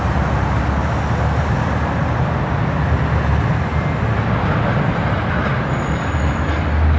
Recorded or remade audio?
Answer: recorded